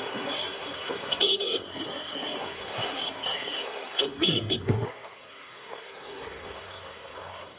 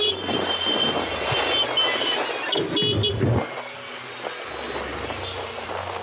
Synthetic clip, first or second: first